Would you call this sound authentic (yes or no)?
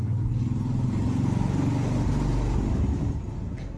yes